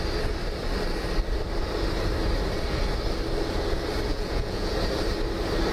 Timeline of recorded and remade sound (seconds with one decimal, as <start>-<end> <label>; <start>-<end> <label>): 0.0-4.1 recorded; 4.1-4.7 remade; 4.7-5.7 recorded